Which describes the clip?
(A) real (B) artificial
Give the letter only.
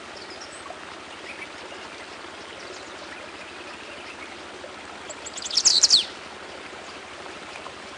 A